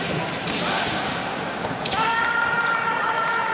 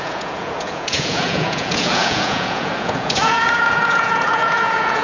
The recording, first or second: first